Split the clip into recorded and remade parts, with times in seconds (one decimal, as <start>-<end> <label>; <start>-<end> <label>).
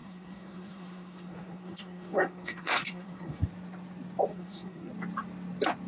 0.0-3.5 remade; 3.5-4.3 recorded; 4.3-4.9 remade; 4.9-5.9 recorded